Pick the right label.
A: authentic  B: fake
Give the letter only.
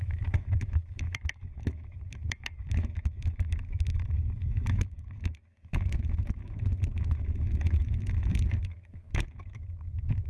B